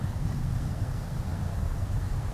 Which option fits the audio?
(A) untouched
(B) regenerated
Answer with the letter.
B